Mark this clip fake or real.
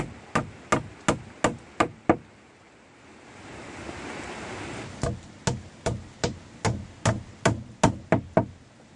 real